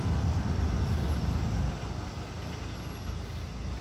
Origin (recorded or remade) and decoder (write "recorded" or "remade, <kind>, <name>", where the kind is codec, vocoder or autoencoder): recorded